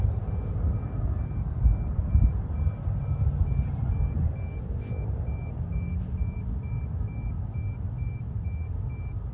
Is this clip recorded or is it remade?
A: recorded